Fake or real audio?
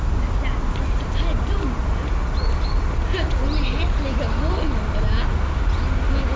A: real